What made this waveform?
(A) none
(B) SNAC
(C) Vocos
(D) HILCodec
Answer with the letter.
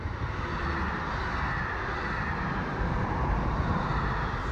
A